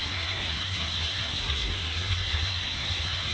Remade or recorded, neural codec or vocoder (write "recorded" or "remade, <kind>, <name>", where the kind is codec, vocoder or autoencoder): remade, codec, SNAC